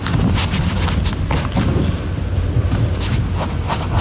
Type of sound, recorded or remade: recorded